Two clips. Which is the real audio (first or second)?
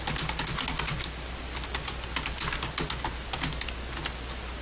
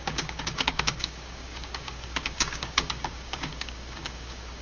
first